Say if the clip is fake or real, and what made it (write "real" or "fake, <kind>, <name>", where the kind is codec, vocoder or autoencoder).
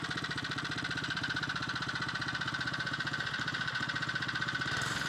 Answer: fake, vocoder, BigVGAN v2